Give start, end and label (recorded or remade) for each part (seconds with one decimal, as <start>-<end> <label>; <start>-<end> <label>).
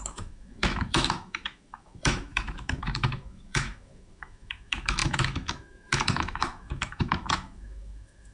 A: 0.0-8.3 remade